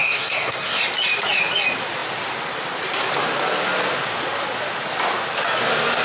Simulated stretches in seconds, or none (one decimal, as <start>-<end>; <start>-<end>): 0.0-0.8